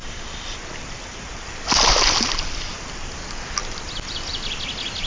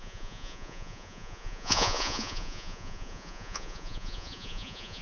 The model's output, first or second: second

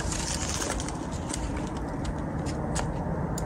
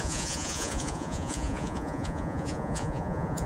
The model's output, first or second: second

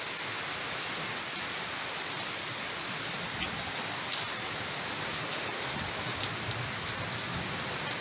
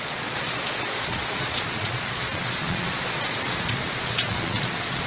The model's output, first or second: second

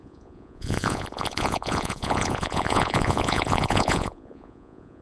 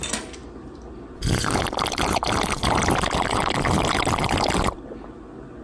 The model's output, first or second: first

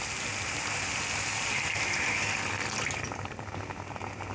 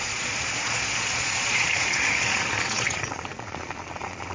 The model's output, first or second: second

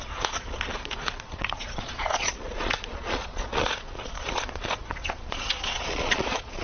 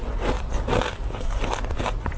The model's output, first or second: first